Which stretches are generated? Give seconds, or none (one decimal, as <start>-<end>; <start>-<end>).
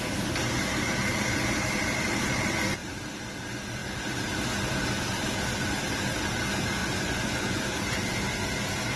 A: 6.8-7.6